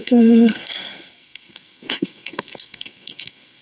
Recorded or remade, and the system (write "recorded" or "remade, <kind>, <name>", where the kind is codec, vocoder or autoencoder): remade, codec, SNAC